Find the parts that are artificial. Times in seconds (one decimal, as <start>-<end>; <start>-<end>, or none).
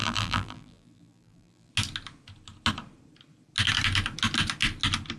0.0-1.7